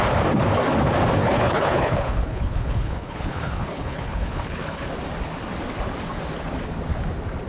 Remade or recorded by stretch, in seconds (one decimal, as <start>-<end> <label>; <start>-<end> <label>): 0.0-1.2 recorded; 1.2-4.9 remade; 4.9-7.5 recorded